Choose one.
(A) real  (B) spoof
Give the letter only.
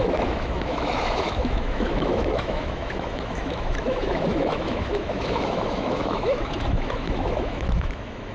B